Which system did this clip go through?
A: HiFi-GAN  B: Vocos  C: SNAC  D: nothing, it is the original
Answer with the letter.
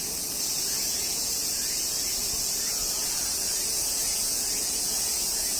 B